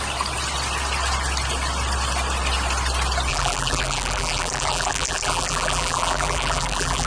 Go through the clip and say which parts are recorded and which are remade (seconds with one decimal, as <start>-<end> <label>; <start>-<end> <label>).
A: 0.0-3.3 recorded; 3.3-7.1 remade